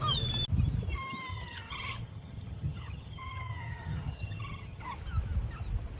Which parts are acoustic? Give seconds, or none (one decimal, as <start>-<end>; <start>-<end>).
0.0-1.3; 4.8-6.0